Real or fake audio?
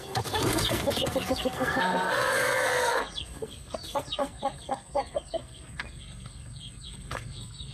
fake